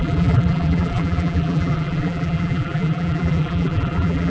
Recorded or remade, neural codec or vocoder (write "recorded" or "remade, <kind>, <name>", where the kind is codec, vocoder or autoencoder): remade, vocoder, BigVGAN v2